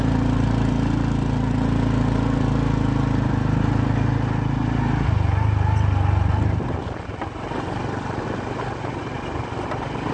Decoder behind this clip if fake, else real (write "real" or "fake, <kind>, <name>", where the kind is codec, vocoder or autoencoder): real